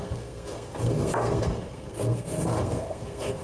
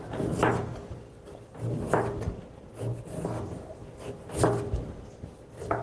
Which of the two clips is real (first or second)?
second